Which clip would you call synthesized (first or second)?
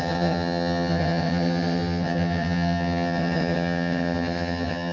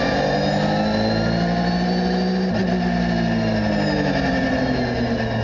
first